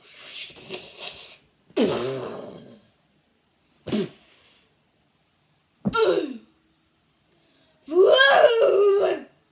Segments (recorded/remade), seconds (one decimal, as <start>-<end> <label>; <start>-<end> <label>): 0.0-2.3 recorded; 2.3-2.9 remade; 2.9-9.5 recorded

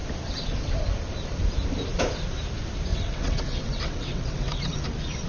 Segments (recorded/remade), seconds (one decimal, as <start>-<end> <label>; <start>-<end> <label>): 0.0-2.9 recorded; 2.9-4.6 remade; 4.6-5.3 recorded

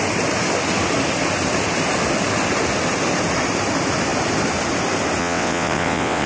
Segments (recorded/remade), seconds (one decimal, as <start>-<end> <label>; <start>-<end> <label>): 0.0-5.2 recorded; 5.2-6.3 remade

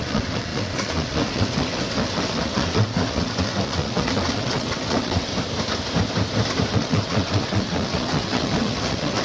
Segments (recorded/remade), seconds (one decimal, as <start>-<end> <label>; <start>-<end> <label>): 0.0-5.3 remade; 5.3-6.7 recorded; 6.7-9.2 remade

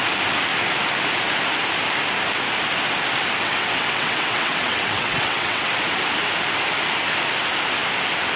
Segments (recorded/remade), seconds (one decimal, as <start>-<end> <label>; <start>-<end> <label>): 0.0-3.4 recorded; 3.4-5.7 remade; 5.7-8.4 recorded